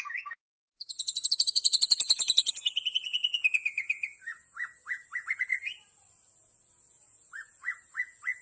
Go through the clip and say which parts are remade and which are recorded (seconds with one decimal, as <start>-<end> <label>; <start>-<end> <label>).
0.0-5.5 remade; 5.5-6.9 recorded; 6.9-8.4 remade